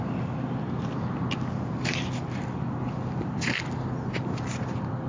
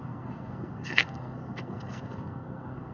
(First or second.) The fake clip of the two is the second